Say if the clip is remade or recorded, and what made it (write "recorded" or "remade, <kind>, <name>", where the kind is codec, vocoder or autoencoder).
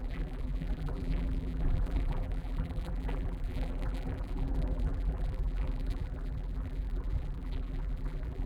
remade, vocoder, BigVGAN v2